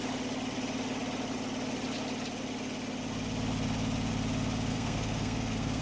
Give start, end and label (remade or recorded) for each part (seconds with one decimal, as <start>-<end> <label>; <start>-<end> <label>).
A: 0.0-4.7 recorded; 4.7-5.8 remade